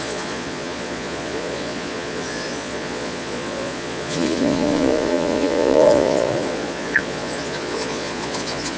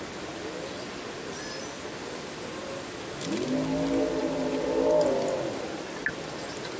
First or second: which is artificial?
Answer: first